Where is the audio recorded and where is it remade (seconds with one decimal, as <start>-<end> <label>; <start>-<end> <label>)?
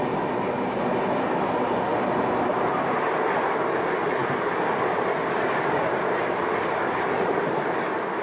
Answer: 0.0-8.2 recorded